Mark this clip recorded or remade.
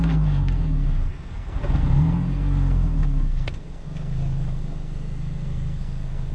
remade